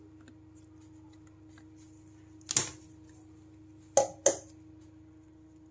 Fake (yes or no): no